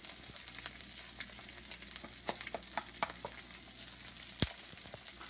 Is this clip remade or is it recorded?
recorded